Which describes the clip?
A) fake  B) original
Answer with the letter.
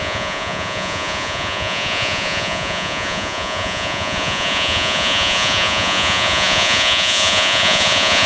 A